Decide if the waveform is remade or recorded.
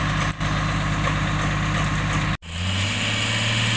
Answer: recorded